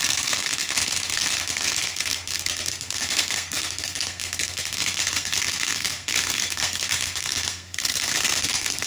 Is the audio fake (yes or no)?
yes